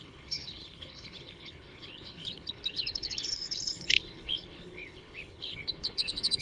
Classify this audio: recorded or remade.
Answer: remade